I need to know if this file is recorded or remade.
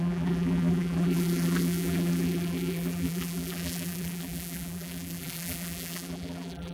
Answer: remade